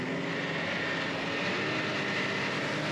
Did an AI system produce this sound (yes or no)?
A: no